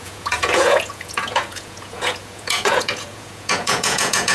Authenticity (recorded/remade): remade